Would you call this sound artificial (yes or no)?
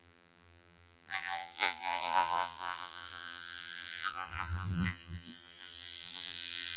yes